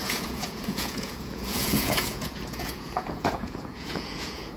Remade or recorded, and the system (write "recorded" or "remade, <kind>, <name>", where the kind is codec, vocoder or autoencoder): remade, vocoder, Vocos